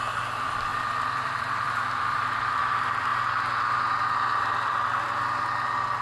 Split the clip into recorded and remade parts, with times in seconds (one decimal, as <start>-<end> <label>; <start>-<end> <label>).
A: 0.0-3.1 remade; 3.1-6.0 recorded